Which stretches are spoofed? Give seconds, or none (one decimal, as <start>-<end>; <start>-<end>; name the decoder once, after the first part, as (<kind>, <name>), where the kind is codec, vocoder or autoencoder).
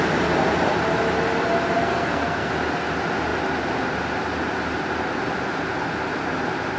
1.8-2.5 (codec, SNAC)